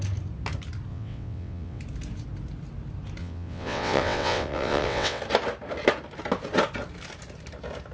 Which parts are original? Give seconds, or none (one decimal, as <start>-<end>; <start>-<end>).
0.0-0.9; 1.8-3.2; 5.2-7.9